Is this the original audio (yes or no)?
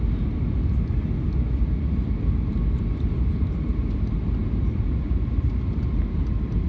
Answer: yes